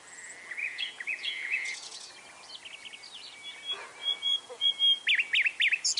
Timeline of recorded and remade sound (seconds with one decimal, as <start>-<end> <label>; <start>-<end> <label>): 0.0-0.6 recorded; 0.6-2.1 remade; 2.1-4.0 recorded; 4.0-4.7 remade; 4.7-6.0 recorded